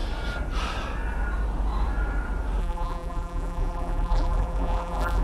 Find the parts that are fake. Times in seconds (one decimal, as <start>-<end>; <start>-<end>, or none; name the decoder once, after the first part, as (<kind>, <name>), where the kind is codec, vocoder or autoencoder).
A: 2.6-5.2 (vocoder, BigVGAN v2)